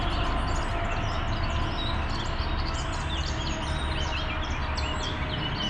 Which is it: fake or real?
real